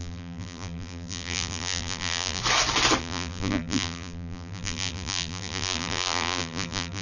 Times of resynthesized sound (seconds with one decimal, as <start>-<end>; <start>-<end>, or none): 0.0-2.4; 3.0-7.0